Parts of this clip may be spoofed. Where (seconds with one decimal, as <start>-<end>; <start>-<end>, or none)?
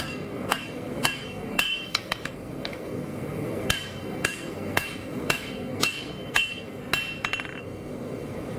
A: 0.0-6.8; 7.6-8.6